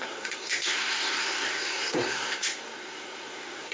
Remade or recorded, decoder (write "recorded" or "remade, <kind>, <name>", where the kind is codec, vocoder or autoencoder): remade, codec, SNAC